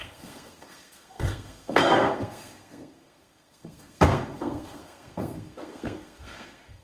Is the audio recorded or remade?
remade